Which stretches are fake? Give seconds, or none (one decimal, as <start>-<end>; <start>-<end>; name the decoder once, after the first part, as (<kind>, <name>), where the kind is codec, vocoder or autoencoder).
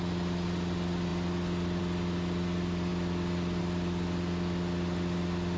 none